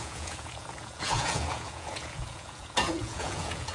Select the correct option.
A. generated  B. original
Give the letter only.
A